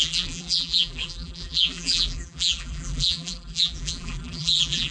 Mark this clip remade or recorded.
remade